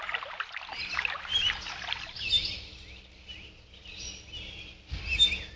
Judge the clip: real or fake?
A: real